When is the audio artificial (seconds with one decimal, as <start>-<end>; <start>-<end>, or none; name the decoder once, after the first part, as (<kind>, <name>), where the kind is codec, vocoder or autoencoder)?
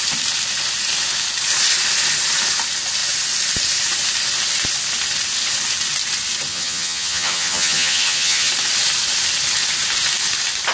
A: 6.5-8.5 (vocoder, HiFi-GAN)